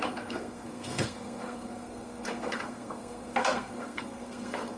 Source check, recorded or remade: remade